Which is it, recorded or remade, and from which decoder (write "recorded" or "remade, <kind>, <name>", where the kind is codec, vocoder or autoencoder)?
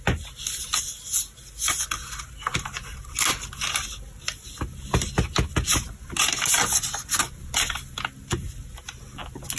recorded